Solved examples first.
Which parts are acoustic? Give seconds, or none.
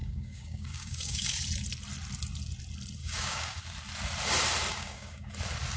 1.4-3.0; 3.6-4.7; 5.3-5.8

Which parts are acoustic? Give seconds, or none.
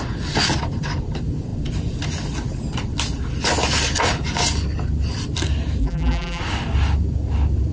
0.0-5.8; 6.4-7.7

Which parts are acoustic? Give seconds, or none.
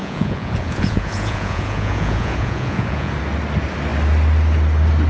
3.1-5.1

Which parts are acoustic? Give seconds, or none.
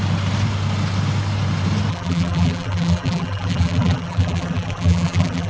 0.0-1.9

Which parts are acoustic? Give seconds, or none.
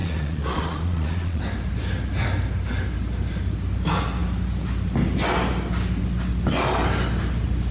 1.4-7.7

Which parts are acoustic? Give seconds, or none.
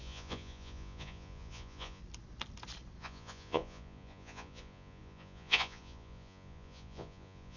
2.0-3.0